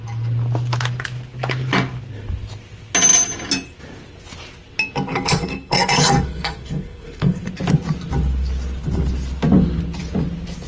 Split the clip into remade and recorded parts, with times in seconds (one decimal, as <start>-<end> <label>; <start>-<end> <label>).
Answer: 0.0-5.1 recorded; 5.1-7.5 remade; 7.5-10.7 recorded